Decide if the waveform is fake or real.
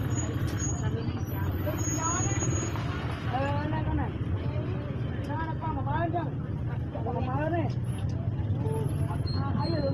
real